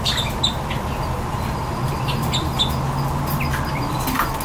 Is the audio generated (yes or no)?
no